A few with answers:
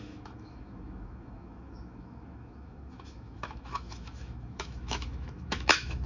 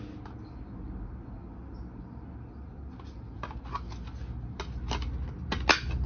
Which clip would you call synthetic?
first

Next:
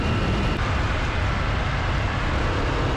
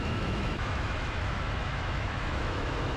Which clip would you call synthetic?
second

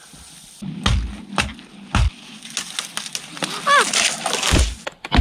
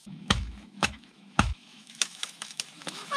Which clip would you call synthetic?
second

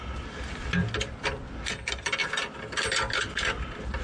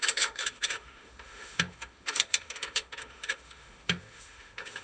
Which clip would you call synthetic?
second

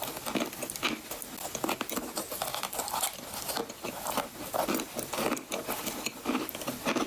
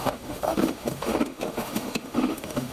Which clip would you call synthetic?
second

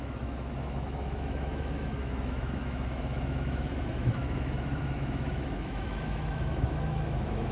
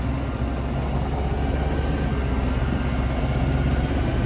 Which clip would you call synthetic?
first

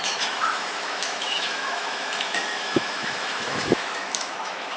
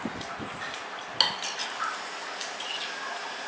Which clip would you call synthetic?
first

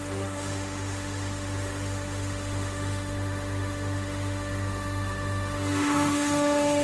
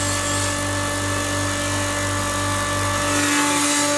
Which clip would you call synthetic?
first